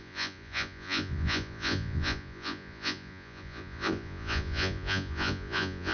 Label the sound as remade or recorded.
remade